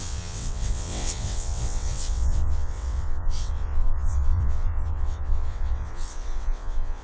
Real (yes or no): no